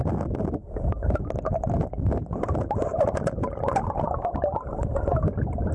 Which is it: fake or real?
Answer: real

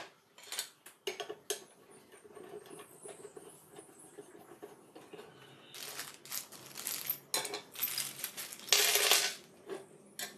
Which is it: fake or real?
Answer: real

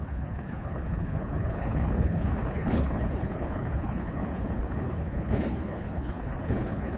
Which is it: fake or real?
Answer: fake